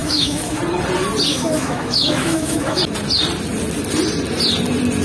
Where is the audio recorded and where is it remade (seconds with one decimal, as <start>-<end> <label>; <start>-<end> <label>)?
0.0-0.6 remade; 0.6-1.3 recorded; 1.3-2.8 remade; 2.8-5.0 recorded

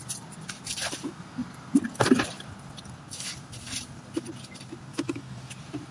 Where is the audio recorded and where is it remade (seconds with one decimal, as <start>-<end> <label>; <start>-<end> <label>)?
0.0-4.9 recorded; 4.9-5.5 remade; 5.5-5.9 recorded

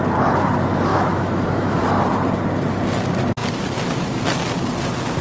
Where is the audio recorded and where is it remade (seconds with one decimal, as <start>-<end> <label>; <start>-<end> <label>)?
0.0-0.9 recorded; 0.9-1.8 remade; 1.8-5.2 recorded

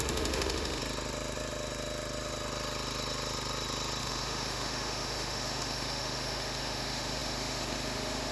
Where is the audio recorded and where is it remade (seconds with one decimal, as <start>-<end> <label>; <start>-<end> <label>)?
0.0-0.8 remade; 0.8-4.0 recorded; 4.0-8.3 remade

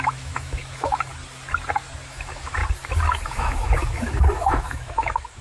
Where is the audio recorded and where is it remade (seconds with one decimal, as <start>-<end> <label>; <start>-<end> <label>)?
0.0-1.1 remade; 1.1-2.1 recorded; 2.1-2.6 remade; 2.6-3.3 recorded; 3.3-5.4 remade

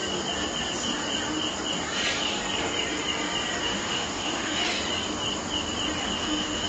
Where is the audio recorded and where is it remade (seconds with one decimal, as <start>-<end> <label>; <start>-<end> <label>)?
0.0-3.6 recorded; 3.6-4.6 remade; 4.6-6.2 recorded; 6.2-6.7 remade

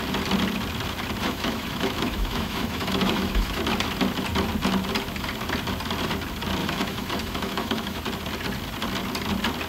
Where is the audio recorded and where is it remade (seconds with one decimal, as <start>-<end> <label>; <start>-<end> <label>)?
0.0-1.2 recorded; 1.2-3.6 remade; 3.6-6.6 recorded; 6.6-8.0 remade; 8.0-9.7 recorded